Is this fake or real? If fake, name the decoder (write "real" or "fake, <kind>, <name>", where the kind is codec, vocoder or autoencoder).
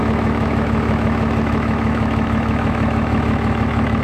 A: fake, autoencoder, DAC-VAE